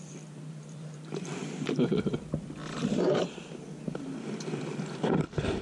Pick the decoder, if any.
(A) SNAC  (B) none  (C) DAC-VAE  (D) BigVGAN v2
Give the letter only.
D